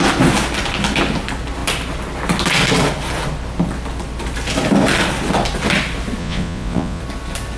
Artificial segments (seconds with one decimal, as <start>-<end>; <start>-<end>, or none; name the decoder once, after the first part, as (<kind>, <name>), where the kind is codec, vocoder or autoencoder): 6.2-7.0 (vocoder, Vocos)